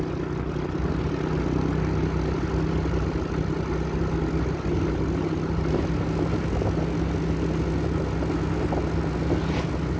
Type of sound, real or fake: real